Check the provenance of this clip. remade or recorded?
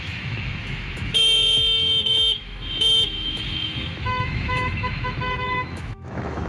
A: remade